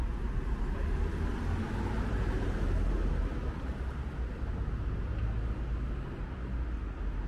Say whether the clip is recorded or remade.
recorded